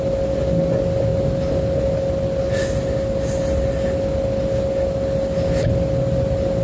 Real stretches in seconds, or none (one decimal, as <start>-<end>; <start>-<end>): 0.0-6.6